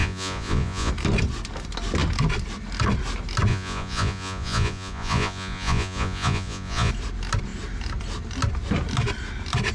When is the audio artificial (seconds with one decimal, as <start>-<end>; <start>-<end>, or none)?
0.0-0.9; 3.5-6.9